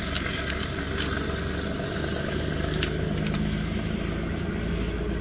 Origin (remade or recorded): recorded